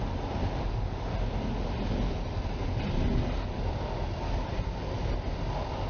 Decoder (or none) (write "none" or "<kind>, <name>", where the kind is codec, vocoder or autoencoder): none